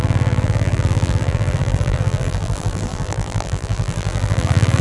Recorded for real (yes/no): no